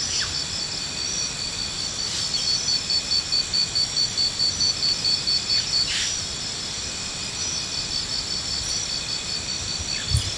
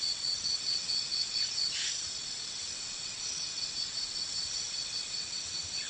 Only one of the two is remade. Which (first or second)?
second